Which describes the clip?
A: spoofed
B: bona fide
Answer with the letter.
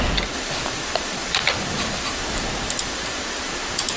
B